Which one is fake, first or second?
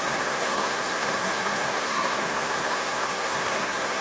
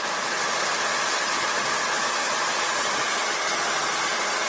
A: first